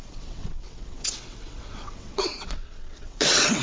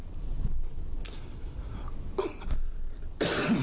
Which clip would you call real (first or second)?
second